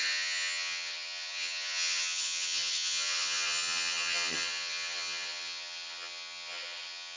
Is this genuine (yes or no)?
no